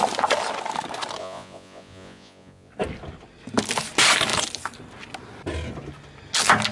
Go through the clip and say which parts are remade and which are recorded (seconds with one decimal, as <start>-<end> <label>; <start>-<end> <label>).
0.0-1.2 recorded; 1.2-2.7 remade; 2.7-6.7 recorded